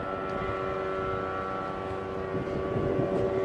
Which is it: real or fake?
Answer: real